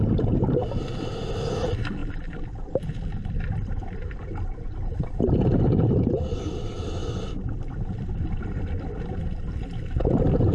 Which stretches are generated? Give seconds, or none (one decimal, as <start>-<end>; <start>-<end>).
2.0-5.6; 7.0-8.6